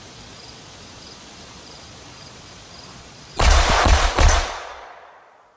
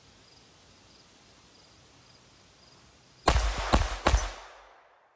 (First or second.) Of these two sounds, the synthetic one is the first